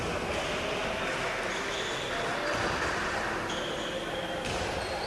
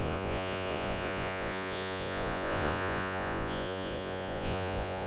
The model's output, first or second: second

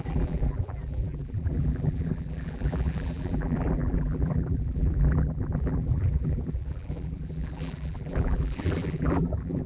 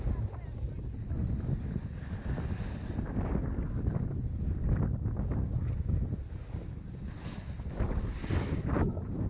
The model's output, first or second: first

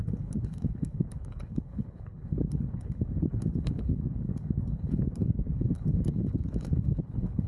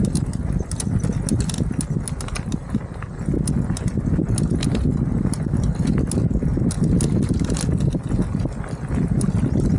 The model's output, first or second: first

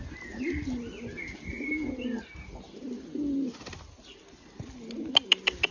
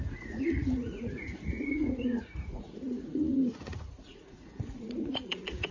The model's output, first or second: second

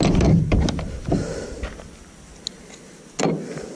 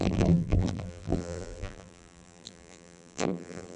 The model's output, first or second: second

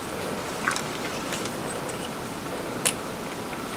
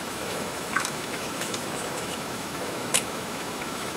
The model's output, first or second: second